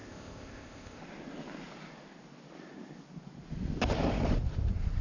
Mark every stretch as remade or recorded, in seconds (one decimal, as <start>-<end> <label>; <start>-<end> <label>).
0.0-1.0 remade; 1.0-5.0 recorded